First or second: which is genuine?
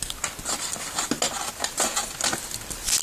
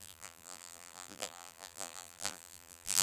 first